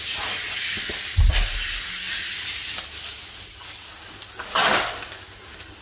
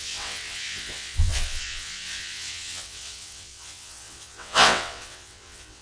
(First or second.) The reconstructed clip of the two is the second